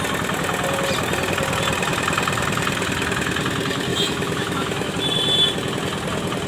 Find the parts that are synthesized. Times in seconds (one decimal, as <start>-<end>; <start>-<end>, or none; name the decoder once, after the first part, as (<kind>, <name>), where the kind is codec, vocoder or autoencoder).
3.9-4.9 (autoencoder, DAC-VAE)